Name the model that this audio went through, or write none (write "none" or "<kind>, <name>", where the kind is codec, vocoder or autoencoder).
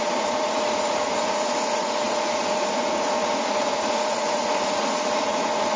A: vocoder, Vocos